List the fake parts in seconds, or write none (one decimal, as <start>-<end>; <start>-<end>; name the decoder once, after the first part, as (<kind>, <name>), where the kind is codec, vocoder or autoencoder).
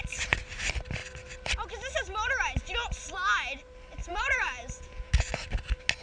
4.0-5.1 (vocoder, Vocos)